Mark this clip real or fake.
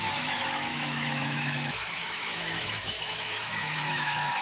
fake